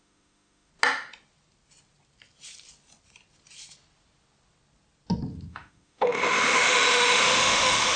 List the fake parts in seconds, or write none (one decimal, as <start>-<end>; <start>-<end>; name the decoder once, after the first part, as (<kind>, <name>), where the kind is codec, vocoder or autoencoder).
0.0-0.7 (autoencoder, DAC-VAE); 5.5-8.0